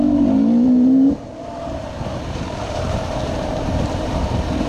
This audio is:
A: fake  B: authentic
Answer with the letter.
A